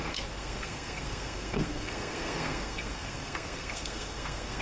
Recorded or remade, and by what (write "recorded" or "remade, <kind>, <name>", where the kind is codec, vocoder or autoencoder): remade, codec, SNAC